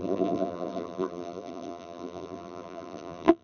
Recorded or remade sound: remade